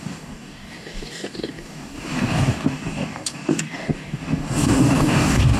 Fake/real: fake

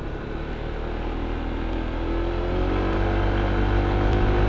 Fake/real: real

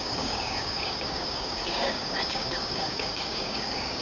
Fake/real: fake